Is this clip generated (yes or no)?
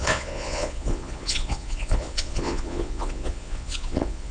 yes